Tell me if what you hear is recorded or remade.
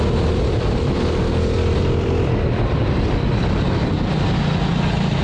recorded